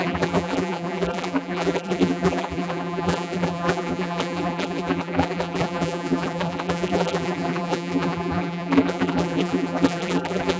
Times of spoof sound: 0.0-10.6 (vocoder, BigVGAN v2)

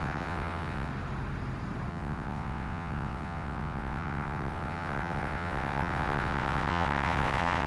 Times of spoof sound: 0.0-0.9 (vocoder, WaveNeXt); 1.9-7.7

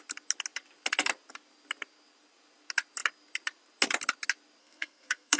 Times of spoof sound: 4.6-5.4 (codec, SNAC)